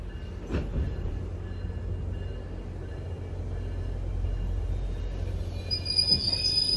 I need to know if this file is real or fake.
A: real